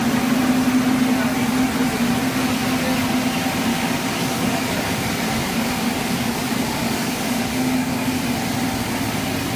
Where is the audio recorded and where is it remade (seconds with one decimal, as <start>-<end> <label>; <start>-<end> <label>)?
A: 0.0-3.7 recorded; 3.7-8.2 remade; 8.2-9.6 recorded